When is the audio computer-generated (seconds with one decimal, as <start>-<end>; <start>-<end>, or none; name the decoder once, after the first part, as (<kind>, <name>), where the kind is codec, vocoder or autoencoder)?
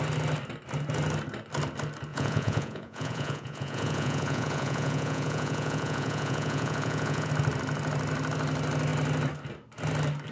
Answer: 2.1-7.3 (vocoder, Vocos)